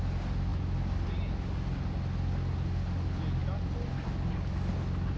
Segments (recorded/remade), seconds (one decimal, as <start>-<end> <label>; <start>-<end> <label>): 0.0-5.2 recorded